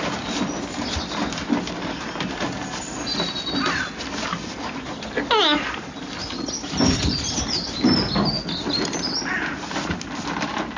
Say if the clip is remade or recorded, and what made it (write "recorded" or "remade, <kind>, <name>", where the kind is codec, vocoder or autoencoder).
recorded